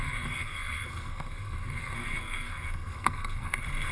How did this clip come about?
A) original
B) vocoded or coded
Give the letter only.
B